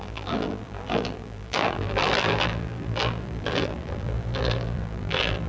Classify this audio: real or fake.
fake